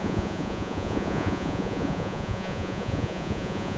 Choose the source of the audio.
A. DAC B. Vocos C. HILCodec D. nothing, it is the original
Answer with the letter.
B